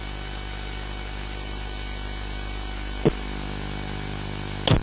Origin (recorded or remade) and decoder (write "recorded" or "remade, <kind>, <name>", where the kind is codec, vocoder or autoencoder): recorded